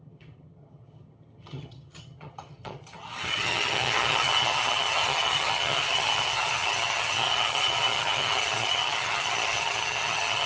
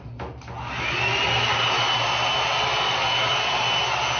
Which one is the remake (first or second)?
first